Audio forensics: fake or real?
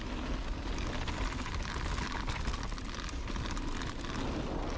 real